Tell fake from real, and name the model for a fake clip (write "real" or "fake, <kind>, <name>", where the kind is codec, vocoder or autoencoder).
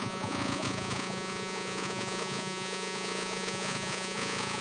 fake, vocoder, Vocos